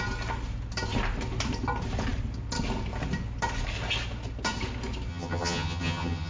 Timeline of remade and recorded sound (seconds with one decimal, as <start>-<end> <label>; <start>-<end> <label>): 0.0-5.1 recorded; 5.1-6.3 remade